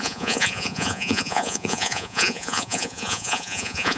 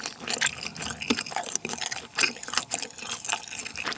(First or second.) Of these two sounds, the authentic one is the second